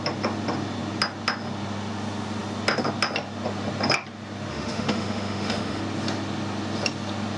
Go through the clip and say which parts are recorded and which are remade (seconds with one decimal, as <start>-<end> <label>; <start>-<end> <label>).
0.0-4.5 recorded; 4.5-5.8 remade; 5.8-7.4 recorded